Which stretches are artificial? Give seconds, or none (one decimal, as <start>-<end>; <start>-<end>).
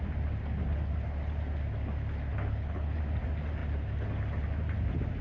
2.3-3.0